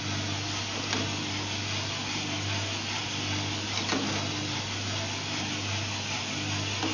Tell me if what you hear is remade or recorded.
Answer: recorded